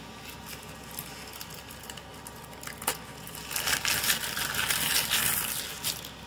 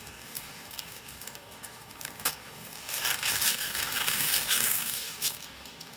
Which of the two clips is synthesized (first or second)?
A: second